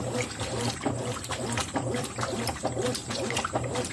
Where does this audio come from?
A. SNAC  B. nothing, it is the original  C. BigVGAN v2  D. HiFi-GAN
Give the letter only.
C